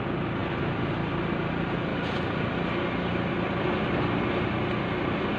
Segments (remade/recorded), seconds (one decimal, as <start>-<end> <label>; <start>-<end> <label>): 0.0-5.4 recorded